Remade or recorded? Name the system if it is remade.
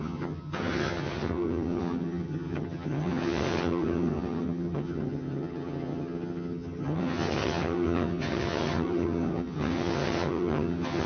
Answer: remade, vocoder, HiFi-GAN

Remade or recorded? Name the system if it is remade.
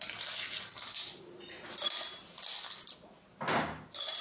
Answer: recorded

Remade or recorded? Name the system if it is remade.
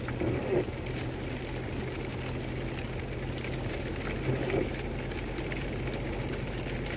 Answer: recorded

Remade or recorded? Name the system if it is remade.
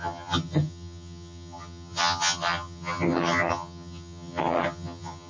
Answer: remade, vocoder, HiFi-GAN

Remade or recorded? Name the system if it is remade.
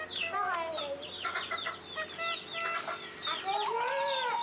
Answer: recorded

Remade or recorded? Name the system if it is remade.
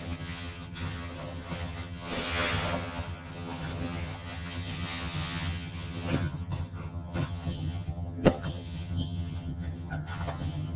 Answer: remade, vocoder, HiFi-GAN